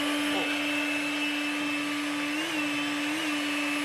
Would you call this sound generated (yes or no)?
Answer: no